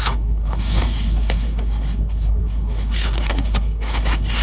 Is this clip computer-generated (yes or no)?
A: yes